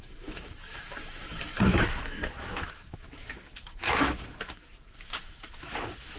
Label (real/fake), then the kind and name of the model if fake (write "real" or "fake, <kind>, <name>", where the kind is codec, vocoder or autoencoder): fake, autoencoder, DAC-VAE